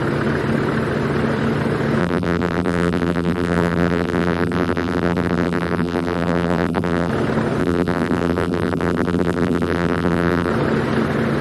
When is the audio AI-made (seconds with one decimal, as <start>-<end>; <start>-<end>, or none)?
2.0-7.1; 7.6-10.5